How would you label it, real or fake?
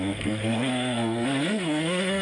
fake